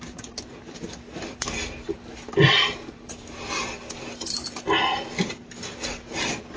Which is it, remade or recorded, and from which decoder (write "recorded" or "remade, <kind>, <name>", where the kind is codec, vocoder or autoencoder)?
recorded